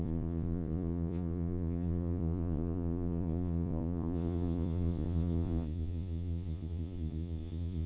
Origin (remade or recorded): remade